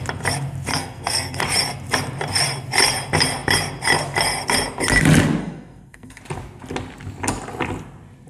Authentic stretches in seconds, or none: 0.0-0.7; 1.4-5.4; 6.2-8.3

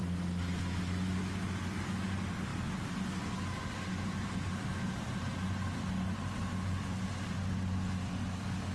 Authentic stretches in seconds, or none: 0.0-8.7

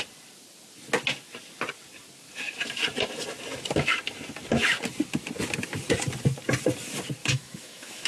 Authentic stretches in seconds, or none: 0.0-7.2

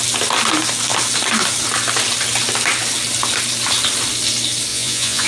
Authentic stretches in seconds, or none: 0.0-4.7

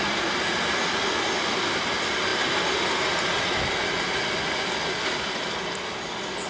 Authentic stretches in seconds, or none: 0.0-6.5